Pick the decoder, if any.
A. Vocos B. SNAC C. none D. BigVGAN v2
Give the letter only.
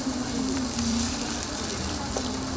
D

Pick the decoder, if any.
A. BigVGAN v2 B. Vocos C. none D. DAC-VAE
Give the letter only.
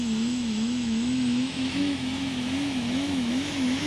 D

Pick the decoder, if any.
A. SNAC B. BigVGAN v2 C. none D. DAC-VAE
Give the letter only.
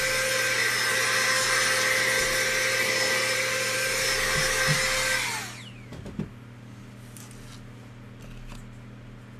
C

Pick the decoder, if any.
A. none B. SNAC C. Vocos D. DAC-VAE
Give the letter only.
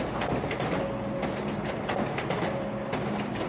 A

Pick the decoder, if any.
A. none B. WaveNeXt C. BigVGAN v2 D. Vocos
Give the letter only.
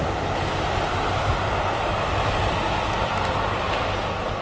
A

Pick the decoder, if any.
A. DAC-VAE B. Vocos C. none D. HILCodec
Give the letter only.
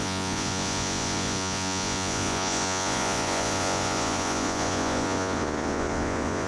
B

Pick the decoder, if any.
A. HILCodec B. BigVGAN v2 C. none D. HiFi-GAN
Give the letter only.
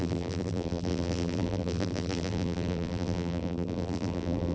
B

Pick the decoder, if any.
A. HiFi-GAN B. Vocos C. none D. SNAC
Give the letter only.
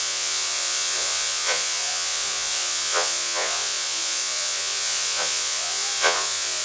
B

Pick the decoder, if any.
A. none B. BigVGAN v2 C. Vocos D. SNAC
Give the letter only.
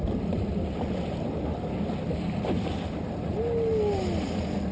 A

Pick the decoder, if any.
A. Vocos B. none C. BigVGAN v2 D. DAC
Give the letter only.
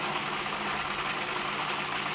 B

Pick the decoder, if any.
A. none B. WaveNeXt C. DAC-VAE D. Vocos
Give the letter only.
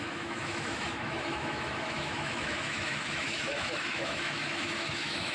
C